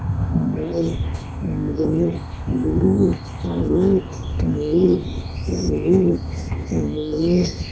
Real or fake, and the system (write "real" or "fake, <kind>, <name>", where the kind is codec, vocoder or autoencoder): fake, codec, ZipCodec